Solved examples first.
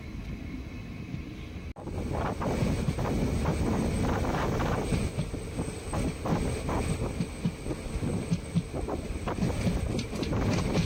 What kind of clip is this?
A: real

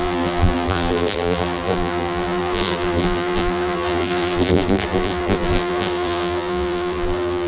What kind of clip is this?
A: fake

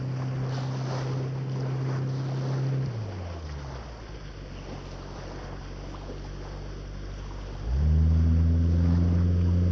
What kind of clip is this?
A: real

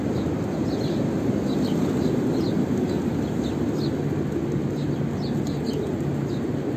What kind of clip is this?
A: real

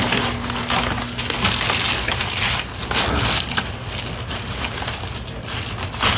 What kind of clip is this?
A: real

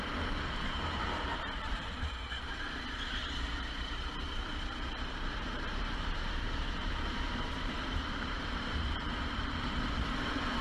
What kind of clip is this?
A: fake